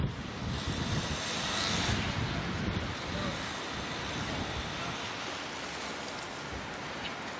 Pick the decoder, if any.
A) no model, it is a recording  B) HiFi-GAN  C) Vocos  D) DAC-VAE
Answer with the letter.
A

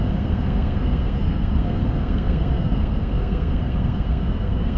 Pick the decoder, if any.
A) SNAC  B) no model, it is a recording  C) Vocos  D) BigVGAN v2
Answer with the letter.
A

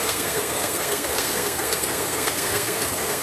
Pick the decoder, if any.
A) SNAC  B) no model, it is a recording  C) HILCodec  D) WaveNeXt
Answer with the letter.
A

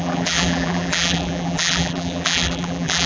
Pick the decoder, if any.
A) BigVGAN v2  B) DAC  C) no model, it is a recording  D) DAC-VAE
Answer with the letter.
A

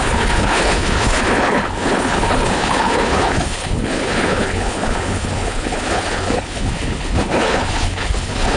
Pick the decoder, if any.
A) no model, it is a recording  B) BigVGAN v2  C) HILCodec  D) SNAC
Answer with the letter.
C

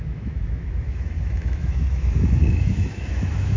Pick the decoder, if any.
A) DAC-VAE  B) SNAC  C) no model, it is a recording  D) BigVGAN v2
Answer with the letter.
A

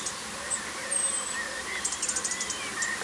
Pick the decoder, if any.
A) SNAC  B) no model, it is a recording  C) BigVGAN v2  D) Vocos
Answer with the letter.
B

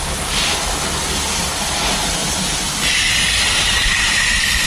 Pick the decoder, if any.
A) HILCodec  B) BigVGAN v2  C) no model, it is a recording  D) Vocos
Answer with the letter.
C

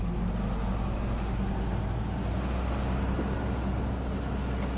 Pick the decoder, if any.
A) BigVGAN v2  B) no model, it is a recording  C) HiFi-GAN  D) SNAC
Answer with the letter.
B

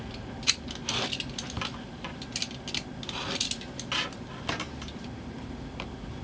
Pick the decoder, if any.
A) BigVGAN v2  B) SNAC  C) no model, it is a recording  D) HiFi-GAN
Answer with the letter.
C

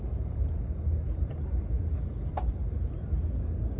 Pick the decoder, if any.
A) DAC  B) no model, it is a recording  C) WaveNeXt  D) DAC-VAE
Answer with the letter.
B